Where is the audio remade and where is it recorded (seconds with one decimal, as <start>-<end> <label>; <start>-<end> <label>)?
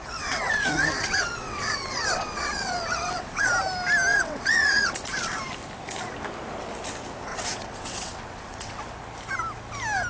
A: 0.0-3.5 remade; 3.5-4.1 recorded; 4.1-4.9 remade; 4.9-7.3 recorded; 7.3-8.8 remade; 8.8-10.1 recorded